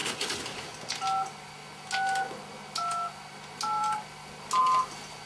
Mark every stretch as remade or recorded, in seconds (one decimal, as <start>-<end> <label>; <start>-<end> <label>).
0.0-5.3 recorded